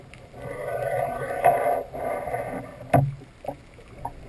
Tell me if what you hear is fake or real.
real